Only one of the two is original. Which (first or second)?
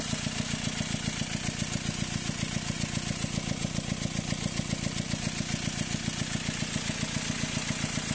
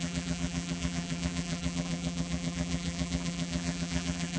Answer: first